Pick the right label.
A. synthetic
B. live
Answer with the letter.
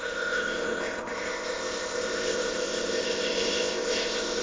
A